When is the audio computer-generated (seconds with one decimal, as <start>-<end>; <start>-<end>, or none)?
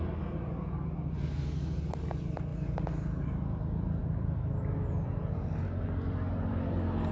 none